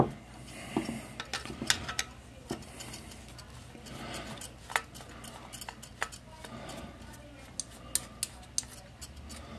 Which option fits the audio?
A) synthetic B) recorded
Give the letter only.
B